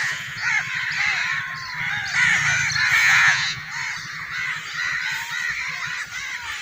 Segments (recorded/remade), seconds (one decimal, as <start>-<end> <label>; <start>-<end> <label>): 0.0-0.5 remade; 0.5-3.0 recorded; 3.0-3.7 remade; 3.7-6.6 recorded